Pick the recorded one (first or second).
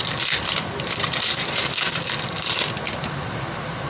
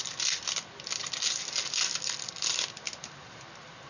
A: second